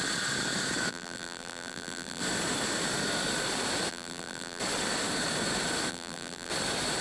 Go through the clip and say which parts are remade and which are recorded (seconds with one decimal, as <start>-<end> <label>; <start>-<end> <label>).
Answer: 0.0-0.9 recorded; 0.9-2.2 remade; 2.2-3.9 recorded; 3.9-4.6 remade; 4.6-5.9 recorded; 5.9-6.5 remade; 6.5-7.0 recorded